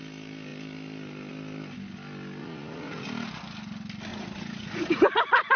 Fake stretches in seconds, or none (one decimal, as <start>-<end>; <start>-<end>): 2.4-3.1; 4.1-5.6